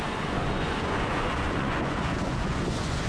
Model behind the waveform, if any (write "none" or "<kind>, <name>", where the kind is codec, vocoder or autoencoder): vocoder, Vocos